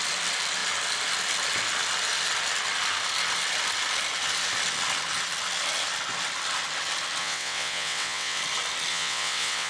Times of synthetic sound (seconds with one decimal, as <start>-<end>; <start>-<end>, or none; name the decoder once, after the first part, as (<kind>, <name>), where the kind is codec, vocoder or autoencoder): 7.2-8.4 (vocoder, WaveNeXt); 8.9-9.7